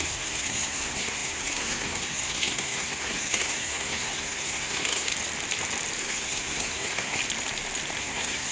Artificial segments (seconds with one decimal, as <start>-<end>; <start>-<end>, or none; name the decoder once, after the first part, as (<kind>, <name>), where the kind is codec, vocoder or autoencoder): 0.0-5.1 (codec, SNAC); 6.0-7.2; 8.0-8.5